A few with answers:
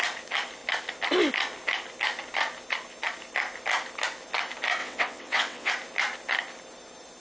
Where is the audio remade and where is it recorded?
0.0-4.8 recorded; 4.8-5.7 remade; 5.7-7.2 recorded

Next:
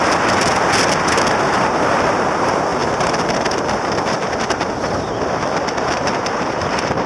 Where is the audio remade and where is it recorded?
0.0-0.7 recorded; 0.7-7.1 remade

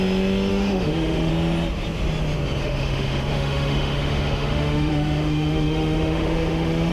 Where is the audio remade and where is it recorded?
0.0-0.5 recorded; 0.5-1.3 remade; 1.3-2.6 recorded; 2.6-6.9 remade

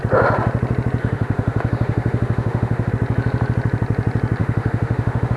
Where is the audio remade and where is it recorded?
0.0-1.0 recorded; 1.0-2.9 remade; 2.9-4.4 recorded; 4.4-5.4 remade

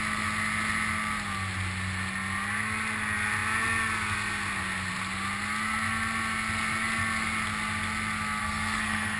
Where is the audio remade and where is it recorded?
0.0-8.4 recorded; 8.4-9.2 remade

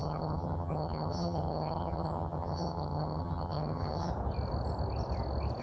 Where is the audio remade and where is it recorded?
0.0-4.1 remade; 4.1-5.6 recorded